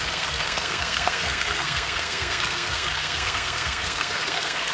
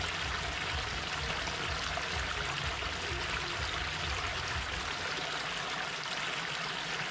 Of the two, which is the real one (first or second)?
second